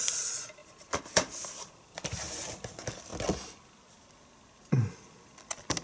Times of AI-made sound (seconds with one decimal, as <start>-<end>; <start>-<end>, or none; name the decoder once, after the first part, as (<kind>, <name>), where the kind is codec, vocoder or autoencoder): 0.6-2.7 (vocoder, BigVGAN v2)

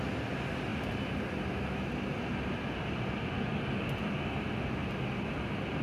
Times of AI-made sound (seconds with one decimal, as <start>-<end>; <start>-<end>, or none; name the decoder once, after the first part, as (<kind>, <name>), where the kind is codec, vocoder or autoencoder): none